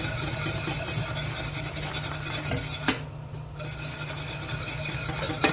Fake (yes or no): no